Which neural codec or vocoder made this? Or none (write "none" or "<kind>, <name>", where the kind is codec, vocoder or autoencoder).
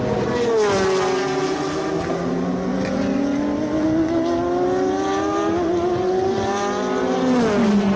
none